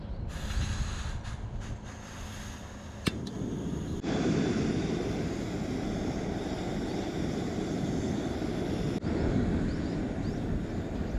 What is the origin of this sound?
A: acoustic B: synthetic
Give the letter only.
A